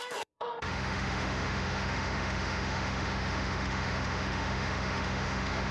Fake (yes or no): yes